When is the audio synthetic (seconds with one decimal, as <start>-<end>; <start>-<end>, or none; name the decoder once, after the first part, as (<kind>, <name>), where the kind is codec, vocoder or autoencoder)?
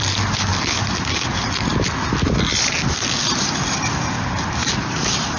4.6-5.4 (vocoder, BigVGAN v2)